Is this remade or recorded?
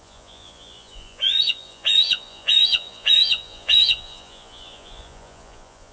remade